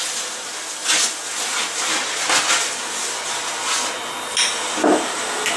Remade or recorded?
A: recorded